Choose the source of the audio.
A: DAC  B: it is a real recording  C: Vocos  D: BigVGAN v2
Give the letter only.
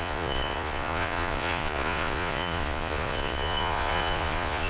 C